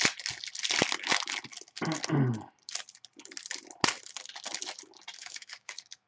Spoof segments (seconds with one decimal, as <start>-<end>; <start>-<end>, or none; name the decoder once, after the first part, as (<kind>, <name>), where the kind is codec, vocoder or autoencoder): 5.2-6.1 (autoencoder, DAC-VAE)